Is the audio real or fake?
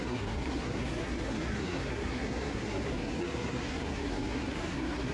fake